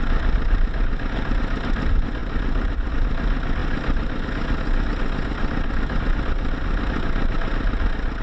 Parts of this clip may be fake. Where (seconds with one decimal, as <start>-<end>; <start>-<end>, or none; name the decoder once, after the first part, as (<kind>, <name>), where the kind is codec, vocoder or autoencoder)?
none